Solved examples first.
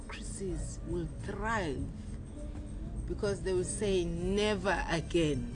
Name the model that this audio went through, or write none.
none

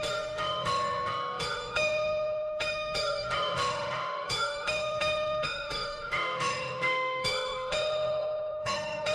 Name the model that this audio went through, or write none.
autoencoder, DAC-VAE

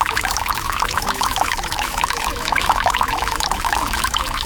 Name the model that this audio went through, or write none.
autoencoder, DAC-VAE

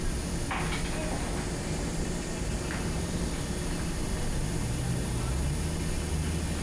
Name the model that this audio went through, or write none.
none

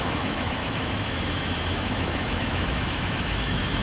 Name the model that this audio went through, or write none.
autoencoder, DAC-VAE